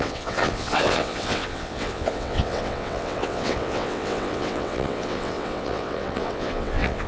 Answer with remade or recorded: remade